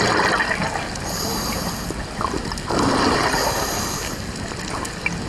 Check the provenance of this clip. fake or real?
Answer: real